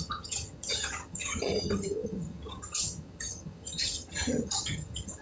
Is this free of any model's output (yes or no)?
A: no